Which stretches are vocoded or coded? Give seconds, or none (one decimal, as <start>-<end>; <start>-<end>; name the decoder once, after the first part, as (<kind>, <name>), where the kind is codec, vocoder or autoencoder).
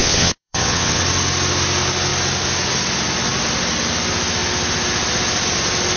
0.0-1.0 (vocoder, WaveNeXt)